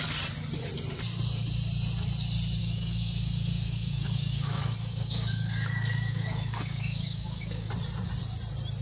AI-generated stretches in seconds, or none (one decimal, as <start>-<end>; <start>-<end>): 2.6-7.7